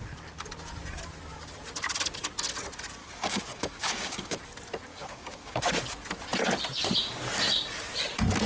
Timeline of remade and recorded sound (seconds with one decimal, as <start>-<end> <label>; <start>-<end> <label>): 0.0-3.0 recorded; 3.0-4.4 remade; 4.4-4.9 recorded; 4.9-5.6 remade; 5.6-8.5 recorded